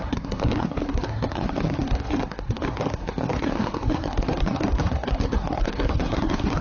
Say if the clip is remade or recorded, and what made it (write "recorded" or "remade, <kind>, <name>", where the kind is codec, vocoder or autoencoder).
remade, codec, SNAC